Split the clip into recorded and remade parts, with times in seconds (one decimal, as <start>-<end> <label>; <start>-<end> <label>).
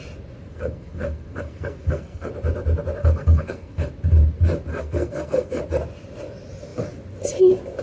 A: 0.0-0.5 recorded; 0.5-2.3 remade; 2.3-3.0 recorded; 3.0-3.9 remade; 3.9-4.7 recorded; 4.7-5.6 remade; 5.6-7.8 recorded